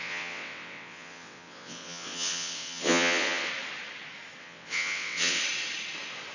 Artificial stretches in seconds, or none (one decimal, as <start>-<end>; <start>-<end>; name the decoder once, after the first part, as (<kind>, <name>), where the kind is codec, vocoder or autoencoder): 0.0-3.5 (vocoder, WaveNeXt); 4.4-5.4